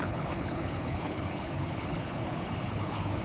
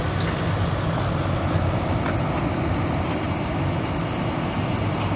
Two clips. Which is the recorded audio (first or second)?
second